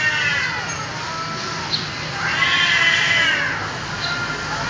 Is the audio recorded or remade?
recorded